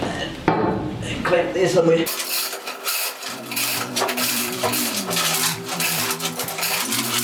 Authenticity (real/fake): fake